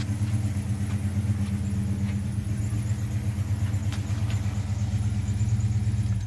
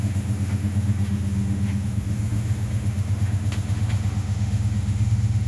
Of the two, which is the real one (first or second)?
first